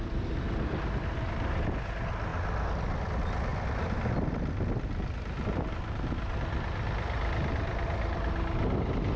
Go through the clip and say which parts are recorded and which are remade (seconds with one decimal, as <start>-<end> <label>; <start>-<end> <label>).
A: 0.0-9.2 recorded